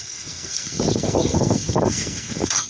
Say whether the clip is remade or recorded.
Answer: remade